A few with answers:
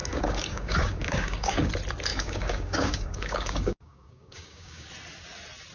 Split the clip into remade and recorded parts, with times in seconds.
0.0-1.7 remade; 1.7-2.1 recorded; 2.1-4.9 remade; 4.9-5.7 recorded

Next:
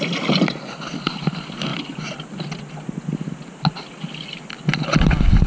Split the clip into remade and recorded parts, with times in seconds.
0.0-5.5 recorded

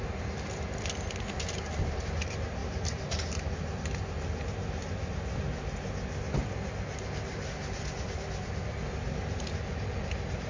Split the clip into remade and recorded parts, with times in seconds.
0.0-2.6 recorded; 2.6-3.1 remade; 3.1-10.5 recorded